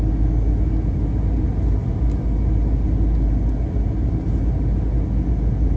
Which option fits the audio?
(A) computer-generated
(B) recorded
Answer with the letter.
B